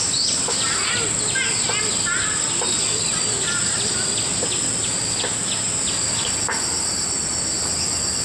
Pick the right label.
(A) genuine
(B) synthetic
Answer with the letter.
A